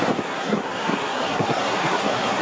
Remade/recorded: remade